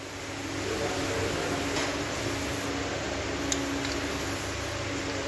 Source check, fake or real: real